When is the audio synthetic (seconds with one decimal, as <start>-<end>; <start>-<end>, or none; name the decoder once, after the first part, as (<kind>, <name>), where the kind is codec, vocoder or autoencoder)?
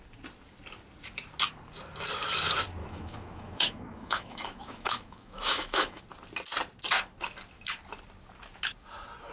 2.8-6.0 (autoencoder, DAC-VAE)